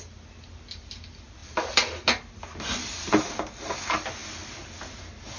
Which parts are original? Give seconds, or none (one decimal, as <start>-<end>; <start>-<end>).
0.0-5.4